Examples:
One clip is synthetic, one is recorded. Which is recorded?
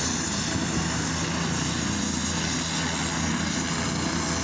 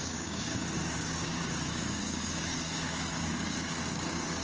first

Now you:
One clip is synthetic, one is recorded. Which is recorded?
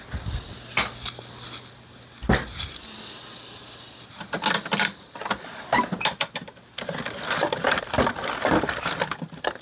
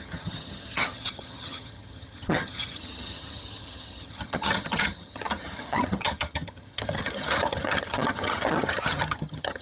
first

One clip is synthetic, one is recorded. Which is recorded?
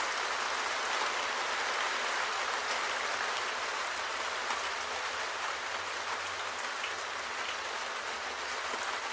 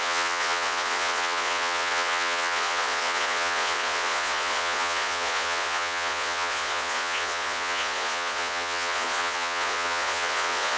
first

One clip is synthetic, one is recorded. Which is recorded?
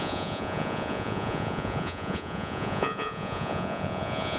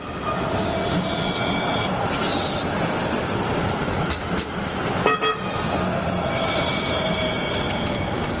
second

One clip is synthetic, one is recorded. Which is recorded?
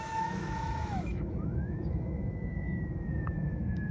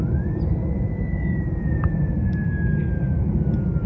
second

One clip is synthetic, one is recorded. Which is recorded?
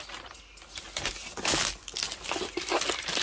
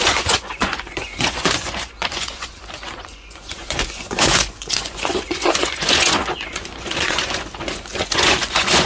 first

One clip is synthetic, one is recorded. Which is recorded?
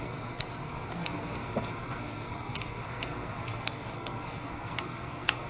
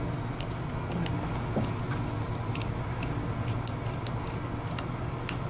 second